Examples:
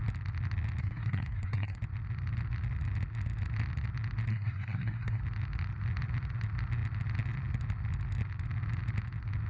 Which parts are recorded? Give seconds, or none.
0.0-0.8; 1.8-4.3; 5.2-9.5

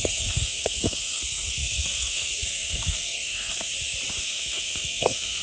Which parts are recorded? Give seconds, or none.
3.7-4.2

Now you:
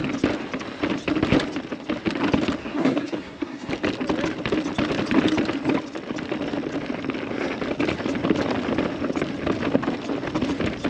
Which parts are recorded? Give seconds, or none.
0.0-2.6; 3.7-10.9

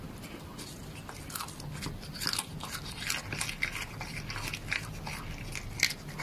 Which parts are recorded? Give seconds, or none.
0.0-6.2

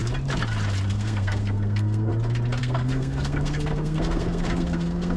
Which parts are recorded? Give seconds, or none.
0.0-0.9; 2.1-2.6

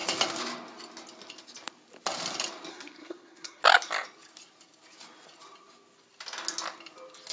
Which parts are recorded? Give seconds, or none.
0.0-2.7; 3.6-7.3

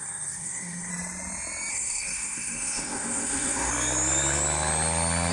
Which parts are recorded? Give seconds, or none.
0.9-1.7; 3.7-5.3

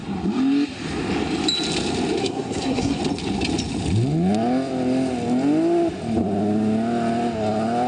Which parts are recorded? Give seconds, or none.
0.0-2.2; 3.0-7.9